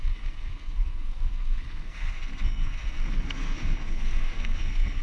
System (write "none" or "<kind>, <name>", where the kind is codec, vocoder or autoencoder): codec, SNAC